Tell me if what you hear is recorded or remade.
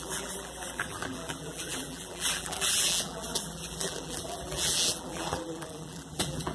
remade